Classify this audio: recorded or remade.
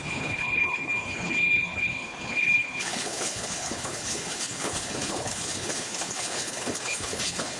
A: remade